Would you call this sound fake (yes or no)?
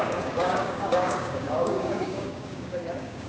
yes